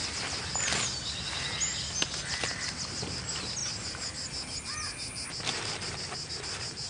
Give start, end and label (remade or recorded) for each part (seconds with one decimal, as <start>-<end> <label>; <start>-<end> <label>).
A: 0.0-6.9 recorded